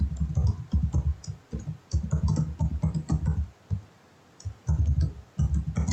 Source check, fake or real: real